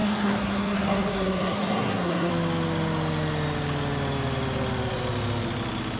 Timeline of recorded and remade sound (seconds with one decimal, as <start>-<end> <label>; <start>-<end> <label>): 0.0-2.3 remade; 2.3-6.0 recorded